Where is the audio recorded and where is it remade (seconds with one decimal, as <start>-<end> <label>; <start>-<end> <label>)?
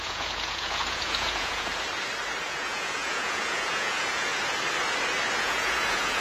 0.0-1.7 remade; 1.7-2.4 recorded; 2.4-4.3 remade; 4.3-5.4 recorded; 5.4-6.2 remade